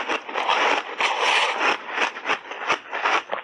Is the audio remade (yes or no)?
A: no